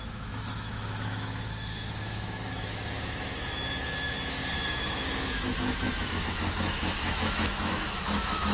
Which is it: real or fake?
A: fake